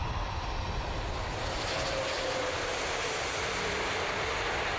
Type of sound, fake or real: real